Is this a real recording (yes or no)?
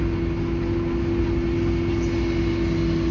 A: yes